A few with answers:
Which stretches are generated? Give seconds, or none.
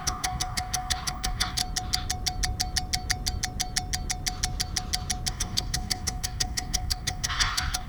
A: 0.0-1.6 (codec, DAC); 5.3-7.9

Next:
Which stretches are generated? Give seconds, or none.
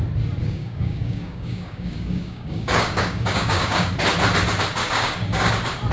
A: 0.4-3.9 (codec, DAC); 4.8-5.5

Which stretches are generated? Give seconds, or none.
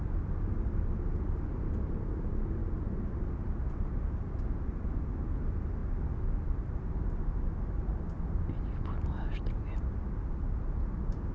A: none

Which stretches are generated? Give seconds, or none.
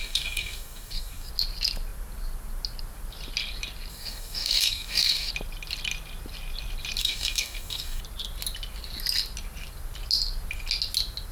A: 0.0-1.3 (codec, DAC); 3.9-5.3; 7.0-8.0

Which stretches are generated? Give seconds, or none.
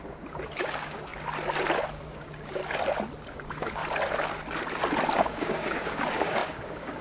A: 0.0-1.1 (codec, DAC); 1.9-2.6; 3.3-3.8; 5.2-7.0